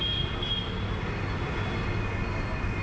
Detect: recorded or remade recorded